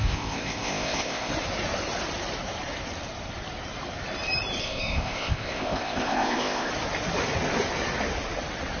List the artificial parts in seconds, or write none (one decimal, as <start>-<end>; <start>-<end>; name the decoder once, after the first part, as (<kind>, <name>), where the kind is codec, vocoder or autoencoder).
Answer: 0.0-1.3 (codec, ZipCodec); 4.6-6.7